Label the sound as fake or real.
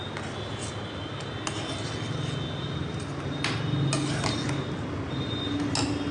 real